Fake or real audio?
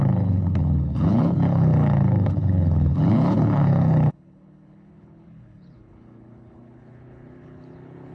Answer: fake